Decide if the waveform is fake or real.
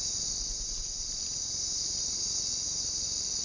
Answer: real